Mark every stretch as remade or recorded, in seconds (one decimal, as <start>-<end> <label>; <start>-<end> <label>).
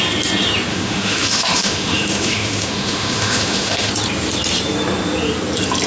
0.0-0.7 recorded; 0.7-3.9 remade; 3.9-5.9 recorded